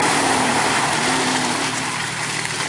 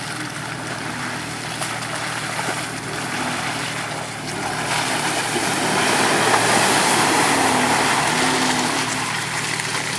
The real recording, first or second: second